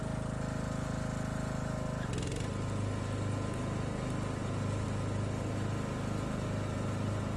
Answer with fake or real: real